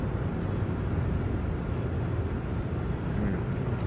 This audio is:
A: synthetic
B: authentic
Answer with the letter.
B